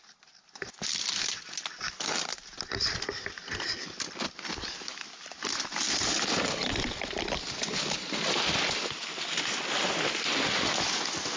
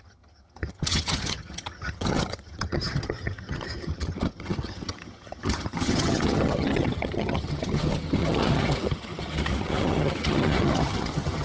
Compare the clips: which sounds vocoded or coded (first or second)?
second